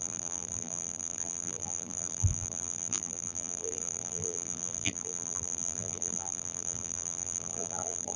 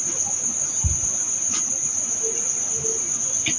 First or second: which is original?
second